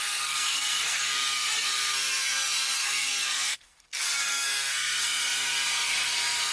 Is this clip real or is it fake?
fake